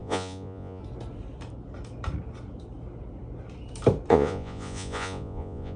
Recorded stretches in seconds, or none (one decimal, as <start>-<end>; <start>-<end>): 0.8-4.1